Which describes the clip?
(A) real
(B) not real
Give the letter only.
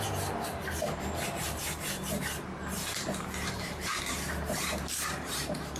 B